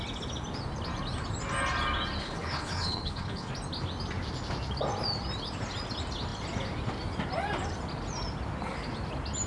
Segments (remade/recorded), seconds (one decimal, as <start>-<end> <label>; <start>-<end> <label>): 0.0-2.2 recorded; 2.2-3.5 remade; 3.5-9.5 recorded